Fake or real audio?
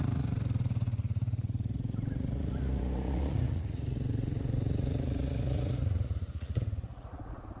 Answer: fake